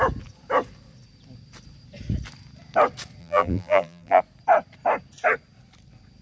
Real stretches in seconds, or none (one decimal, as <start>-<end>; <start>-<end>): 0.0-3.2; 4.2-6.2